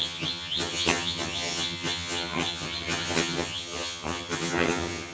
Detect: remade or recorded remade